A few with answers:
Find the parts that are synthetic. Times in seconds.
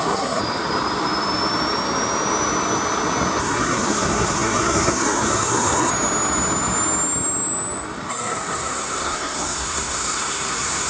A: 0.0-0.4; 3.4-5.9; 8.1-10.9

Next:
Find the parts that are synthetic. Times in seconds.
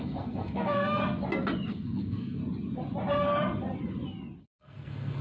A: 0.0-1.0; 1.7-2.4; 4.4-5.2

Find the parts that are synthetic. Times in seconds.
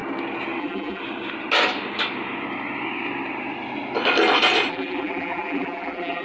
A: 0.6-1.0; 4.7-6.2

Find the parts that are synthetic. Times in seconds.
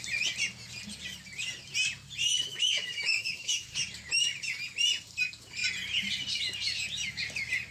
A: 2.5-3.8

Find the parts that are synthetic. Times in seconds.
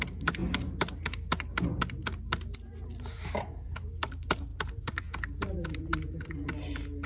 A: none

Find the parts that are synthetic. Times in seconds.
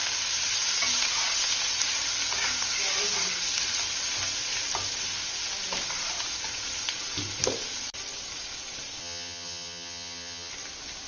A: 9.0-10.5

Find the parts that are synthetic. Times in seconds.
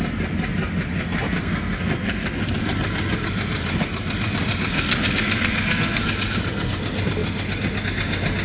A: 1.4-2.4; 4.7-6.0